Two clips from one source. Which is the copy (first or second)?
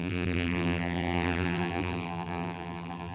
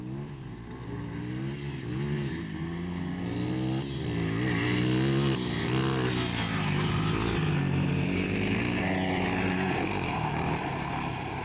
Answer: first